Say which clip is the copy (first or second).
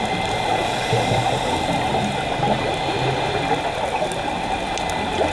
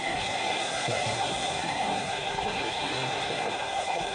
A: second